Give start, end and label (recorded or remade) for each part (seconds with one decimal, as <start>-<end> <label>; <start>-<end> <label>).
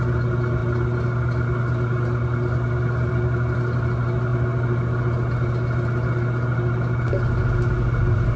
0.0-8.4 recorded